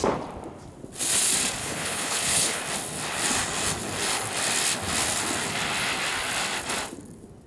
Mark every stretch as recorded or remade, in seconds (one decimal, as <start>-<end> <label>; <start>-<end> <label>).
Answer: 0.0-1.6 recorded; 1.6-2.6 remade; 2.6-7.5 recorded